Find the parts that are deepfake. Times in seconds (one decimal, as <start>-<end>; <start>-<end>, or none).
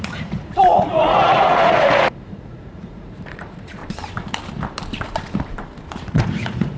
0.0-3.8; 6.1-6.8